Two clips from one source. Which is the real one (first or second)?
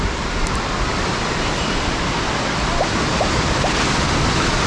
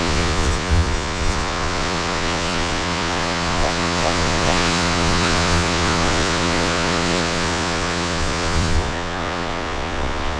first